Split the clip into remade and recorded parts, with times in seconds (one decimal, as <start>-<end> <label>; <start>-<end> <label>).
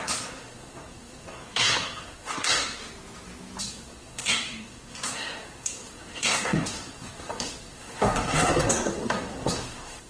0.0-2.8 remade; 2.8-3.6 recorded; 3.6-10.1 remade